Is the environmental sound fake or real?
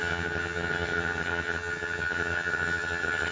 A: fake